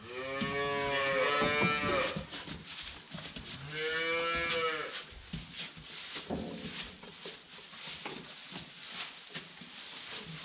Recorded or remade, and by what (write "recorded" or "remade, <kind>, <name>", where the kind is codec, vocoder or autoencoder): recorded